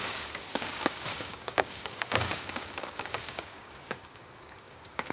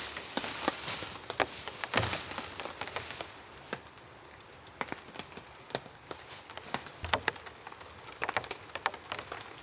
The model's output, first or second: first